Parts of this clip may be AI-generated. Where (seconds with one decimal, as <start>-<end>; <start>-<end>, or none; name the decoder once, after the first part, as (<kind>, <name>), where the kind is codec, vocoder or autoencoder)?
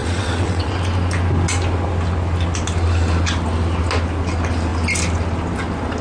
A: 0.0-0.7 (vocoder, WaveNeXt)